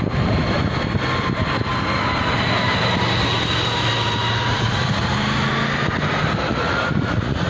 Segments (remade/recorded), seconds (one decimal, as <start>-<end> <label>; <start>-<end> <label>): 0.0-4.5 recorded; 4.5-5.0 remade; 5.0-6.5 recorded; 6.5-7.5 remade